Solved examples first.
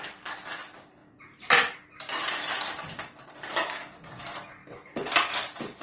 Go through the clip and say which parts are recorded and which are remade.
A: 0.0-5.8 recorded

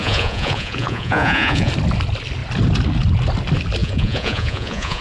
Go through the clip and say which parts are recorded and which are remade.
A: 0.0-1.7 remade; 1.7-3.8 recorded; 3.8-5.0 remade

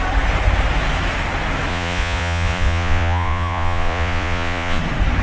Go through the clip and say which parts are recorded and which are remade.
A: 0.0-1.7 recorded; 1.7-4.8 remade; 4.8-5.2 recorded

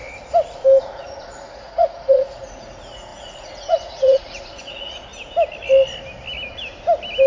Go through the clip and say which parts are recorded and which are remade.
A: 0.0-0.8 recorded; 0.8-5.1 remade; 5.1-7.3 recorded